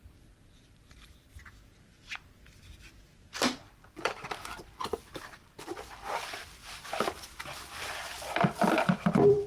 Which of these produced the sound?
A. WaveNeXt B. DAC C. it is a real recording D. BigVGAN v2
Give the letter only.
D